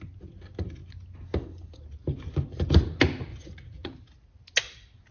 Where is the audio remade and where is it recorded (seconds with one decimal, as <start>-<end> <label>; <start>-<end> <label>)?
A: 0.0-3.3 recorded; 3.3-3.9 remade; 3.9-5.1 recorded